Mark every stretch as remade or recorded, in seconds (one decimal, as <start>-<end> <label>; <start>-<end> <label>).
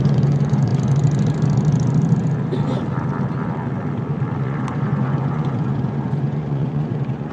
0.0-0.7 remade; 0.7-4.4 recorded; 4.4-7.3 remade